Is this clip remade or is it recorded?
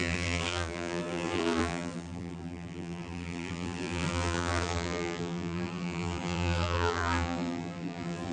remade